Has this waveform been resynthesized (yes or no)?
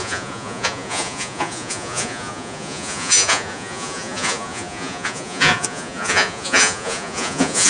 yes